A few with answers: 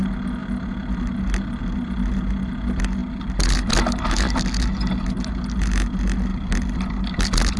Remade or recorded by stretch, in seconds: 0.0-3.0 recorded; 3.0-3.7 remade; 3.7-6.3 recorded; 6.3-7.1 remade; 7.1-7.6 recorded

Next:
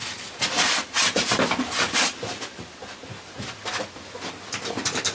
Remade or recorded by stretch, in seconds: 0.0-5.1 recorded

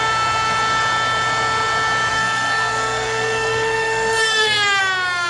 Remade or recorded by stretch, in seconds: 0.0-2.1 recorded; 2.1-4.8 remade; 4.8-5.3 recorded

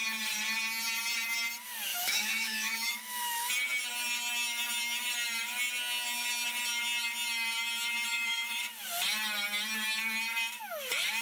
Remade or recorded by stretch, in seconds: 0.0-1.9 recorded; 1.9-3.5 remade; 3.5-8.1 recorded; 8.1-8.6 remade; 8.6-11.2 recorded